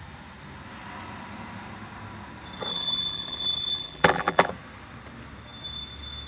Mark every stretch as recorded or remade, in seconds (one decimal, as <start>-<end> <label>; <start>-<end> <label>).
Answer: 0.0-2.7 recorded; 2.7-4.5 remade; 4.5-6.3 recorded